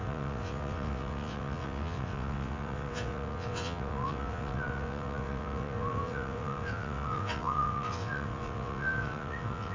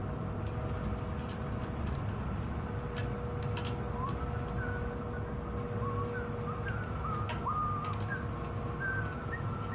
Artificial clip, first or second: first